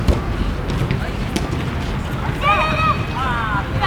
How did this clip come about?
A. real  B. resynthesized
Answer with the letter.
A